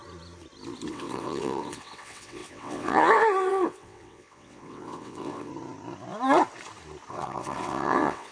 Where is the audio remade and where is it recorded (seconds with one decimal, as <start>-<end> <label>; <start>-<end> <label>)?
0.0-0.9 recorded; 0.9-5.5 remade; 5.5-7.1 recorded; 7.1-8.3 remade